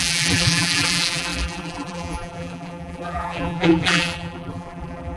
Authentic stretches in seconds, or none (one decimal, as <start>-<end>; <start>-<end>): none